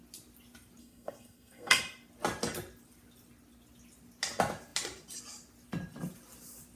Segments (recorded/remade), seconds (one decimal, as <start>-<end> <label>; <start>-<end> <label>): 0.0-0.8 recorded; 0.8-1.8 remade; 1.8-6.8 recorded